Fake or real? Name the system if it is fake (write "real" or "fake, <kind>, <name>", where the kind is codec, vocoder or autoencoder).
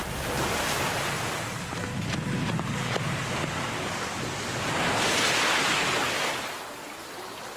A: real